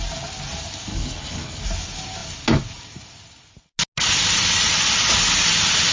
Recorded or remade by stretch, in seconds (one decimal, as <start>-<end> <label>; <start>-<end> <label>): 0.0-0.9 recorded; 0.9-1.6 remade; 1.6-5.9 recorded